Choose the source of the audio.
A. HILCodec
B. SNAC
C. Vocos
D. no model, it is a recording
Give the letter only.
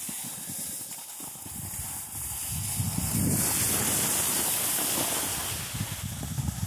D